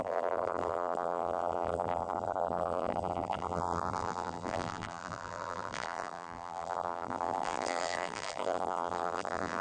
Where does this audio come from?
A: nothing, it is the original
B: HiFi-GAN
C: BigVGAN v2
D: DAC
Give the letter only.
C